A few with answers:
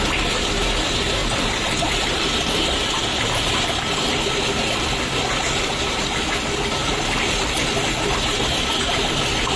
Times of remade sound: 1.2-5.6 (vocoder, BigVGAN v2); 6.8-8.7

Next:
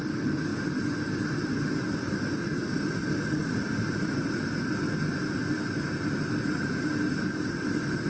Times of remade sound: 3.4-4.2 (vocoder, BigVGAN v2)